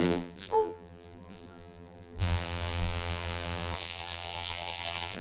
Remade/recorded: remade